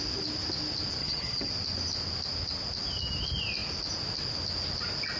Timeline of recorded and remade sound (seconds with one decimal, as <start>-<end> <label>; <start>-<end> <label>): 0.0-1.0 recorded; 1.0-1.5 remade; 1.5-5.2 recorded